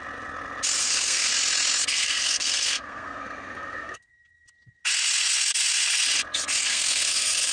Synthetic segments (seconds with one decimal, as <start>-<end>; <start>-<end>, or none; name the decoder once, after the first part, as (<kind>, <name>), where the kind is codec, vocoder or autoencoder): 0.8-1.3 (codec, SNAC); 1.9-4.1; 6.6-7.5